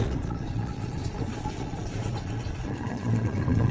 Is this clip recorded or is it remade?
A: remade